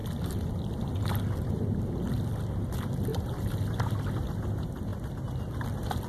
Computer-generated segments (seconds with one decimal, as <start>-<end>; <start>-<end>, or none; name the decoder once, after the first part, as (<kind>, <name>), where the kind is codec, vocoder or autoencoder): 3.1-3.8 (vocoder, BigVGAN v2)